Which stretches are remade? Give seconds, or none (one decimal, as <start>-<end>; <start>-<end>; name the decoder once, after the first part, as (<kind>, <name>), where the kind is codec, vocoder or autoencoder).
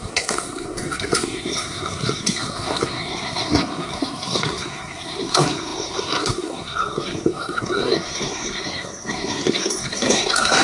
0.0-10.6 (codec, SNAC)